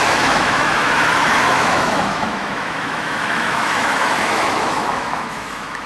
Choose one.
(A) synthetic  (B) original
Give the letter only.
A